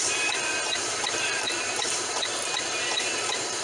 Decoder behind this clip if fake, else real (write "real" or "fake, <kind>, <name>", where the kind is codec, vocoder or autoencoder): fake, vocoder, BigVGAN v2